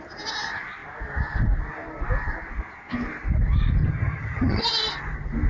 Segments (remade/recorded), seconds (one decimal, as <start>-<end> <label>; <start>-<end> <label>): 0.0-3.8 recorded; 3.8-4.6 remade; 4.6-5.5 recorded